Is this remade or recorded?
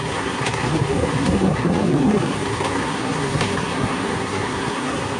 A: remade